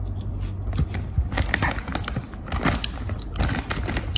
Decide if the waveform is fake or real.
real